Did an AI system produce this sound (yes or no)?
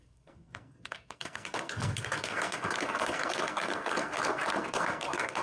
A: yes